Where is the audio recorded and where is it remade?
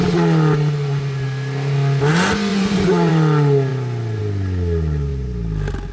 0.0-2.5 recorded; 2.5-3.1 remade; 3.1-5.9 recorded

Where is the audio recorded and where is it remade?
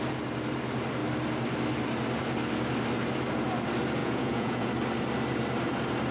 0.0-4.0 recorded; 4.0-4.7 remade; 4.7-6.1 recorded